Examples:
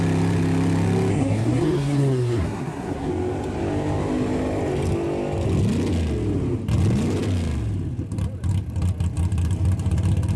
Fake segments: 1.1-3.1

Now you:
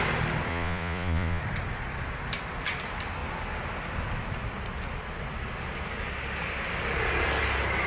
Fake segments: 0.5-1.4